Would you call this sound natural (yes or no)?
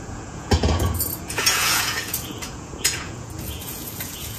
no